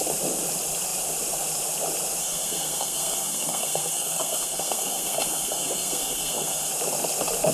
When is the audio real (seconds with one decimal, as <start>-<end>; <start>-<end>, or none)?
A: 0.0-2.2; 6.7-7.5